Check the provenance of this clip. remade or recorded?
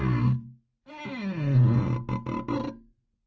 recorded